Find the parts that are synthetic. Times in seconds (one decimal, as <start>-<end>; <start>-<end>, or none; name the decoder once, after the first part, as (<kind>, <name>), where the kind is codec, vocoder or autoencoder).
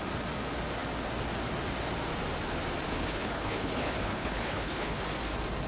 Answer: 2.9-5.0 (codec, HILCodec)